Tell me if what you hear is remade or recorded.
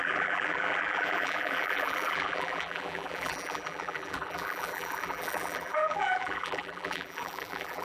remade